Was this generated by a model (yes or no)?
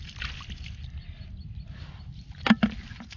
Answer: no